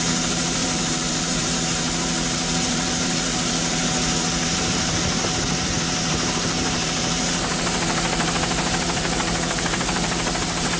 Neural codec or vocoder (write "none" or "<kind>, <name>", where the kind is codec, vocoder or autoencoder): vocoder, BigVGAN v2